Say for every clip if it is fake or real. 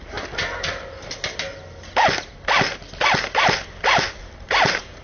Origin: real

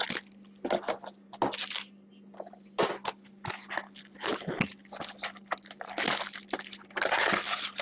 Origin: real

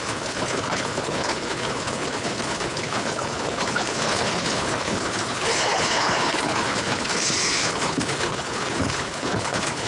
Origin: fake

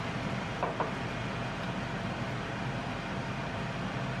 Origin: real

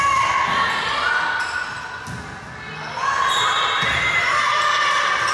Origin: real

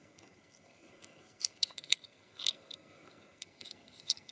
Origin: fake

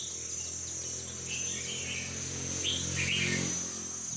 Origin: real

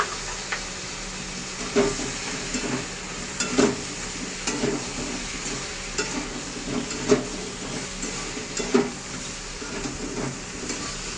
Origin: real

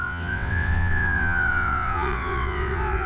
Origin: fake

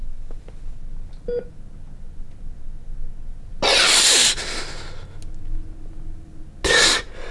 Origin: real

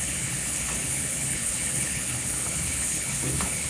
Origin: fake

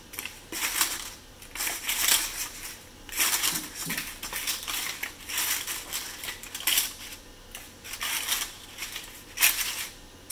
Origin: real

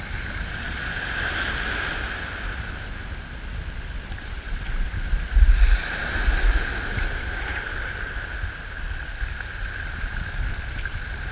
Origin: real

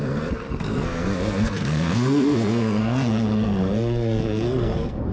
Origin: fake